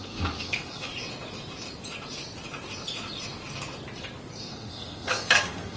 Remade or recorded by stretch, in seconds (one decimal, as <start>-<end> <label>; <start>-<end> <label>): 0.0-0.9 remade; 0.9-4.4 recorded; 4.4-5.8 remade